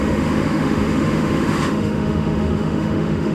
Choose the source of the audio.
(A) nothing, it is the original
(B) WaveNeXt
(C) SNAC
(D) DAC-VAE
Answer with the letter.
D